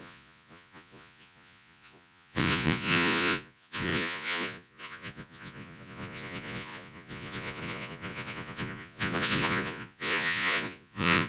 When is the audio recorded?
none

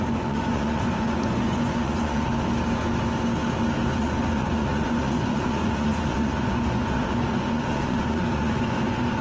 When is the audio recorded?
2.3-4.0

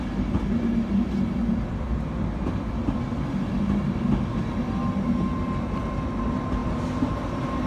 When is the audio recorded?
0.0-7.7